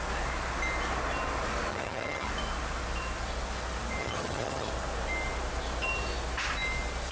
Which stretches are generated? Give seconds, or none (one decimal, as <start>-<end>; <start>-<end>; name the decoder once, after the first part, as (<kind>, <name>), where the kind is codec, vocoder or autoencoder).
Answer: 1.7-2.3 (vocoder, HiFi-GAN); 4.0-4.7